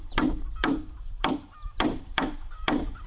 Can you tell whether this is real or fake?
fake